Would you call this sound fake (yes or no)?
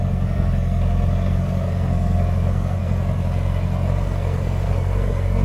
yes